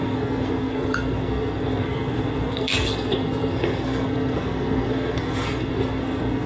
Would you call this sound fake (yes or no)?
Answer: yes